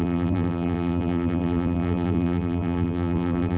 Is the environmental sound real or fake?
fake